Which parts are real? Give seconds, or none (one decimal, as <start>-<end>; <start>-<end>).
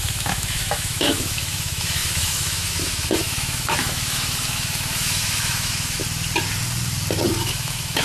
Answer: 6.0-7.4